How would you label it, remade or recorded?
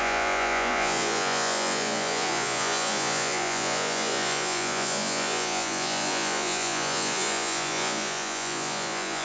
remade